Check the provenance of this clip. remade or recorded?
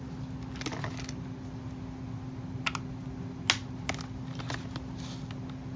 recorded